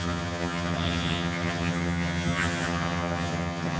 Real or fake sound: fake